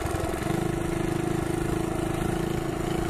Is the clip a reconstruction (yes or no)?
no